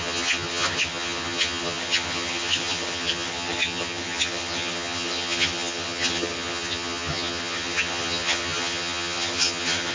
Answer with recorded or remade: remade